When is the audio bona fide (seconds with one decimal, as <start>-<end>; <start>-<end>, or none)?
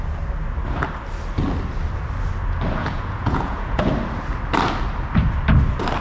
0.0-2.8; 3.8-6.0